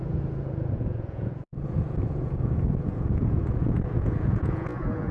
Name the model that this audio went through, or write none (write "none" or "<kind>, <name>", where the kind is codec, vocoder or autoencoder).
vocoder, Vocos